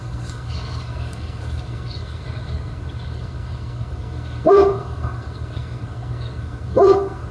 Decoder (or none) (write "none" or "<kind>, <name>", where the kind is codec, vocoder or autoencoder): codec, SNAC